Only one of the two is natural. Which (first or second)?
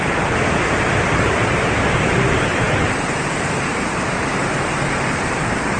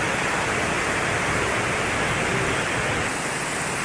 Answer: second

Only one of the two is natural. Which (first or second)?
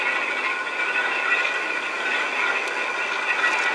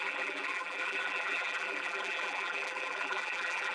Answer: first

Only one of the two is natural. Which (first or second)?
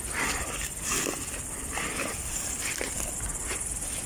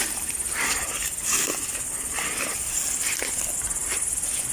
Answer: second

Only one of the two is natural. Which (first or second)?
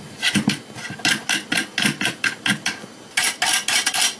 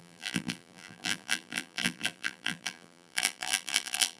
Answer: first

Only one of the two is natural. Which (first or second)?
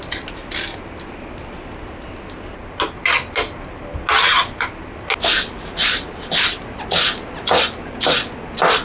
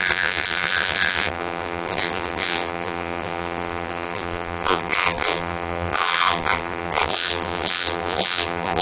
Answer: first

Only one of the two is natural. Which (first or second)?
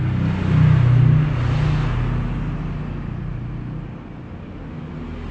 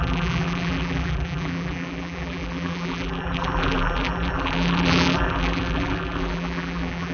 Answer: first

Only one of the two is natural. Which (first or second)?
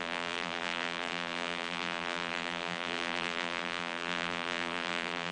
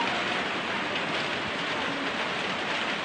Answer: second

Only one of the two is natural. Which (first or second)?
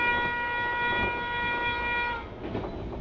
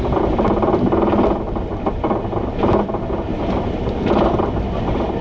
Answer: first